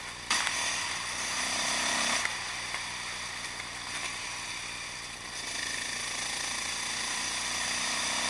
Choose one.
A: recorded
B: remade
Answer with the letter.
A